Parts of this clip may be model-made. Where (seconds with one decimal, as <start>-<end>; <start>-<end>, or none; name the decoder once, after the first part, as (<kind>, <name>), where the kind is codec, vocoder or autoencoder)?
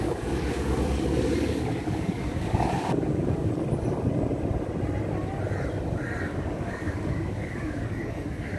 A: 0.0-3.5 (codec, DAC); 6.2-8.6